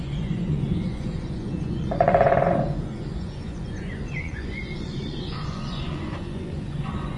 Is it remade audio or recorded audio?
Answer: remade